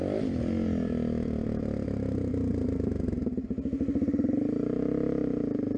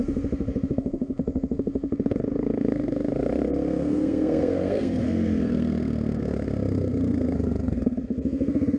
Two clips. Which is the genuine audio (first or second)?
first